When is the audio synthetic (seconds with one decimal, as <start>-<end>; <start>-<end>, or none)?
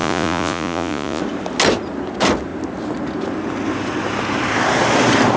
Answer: 0.0-1.2